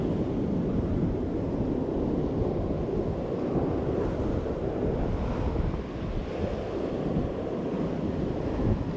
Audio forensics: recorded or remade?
recorded